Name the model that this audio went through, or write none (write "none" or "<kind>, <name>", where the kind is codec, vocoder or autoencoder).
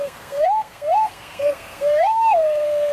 codec, SNAC